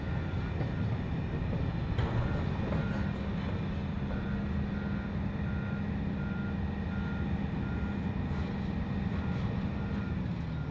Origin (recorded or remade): recorded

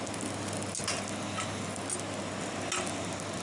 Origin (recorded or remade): recorded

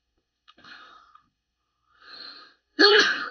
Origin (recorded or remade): remade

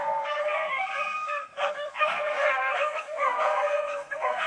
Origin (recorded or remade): remade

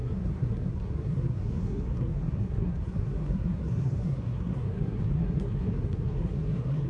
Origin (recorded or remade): remade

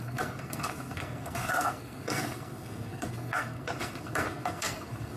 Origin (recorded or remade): remade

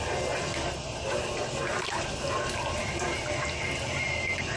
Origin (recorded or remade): recorded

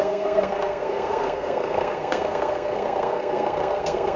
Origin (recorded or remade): remade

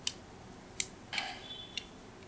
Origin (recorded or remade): recorded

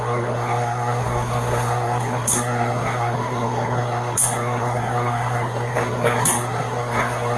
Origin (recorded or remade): remade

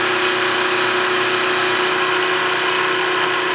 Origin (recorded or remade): recorded